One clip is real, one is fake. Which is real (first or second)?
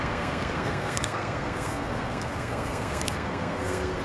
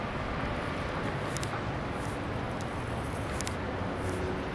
second